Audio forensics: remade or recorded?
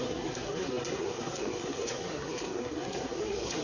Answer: remade